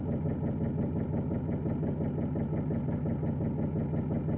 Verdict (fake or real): real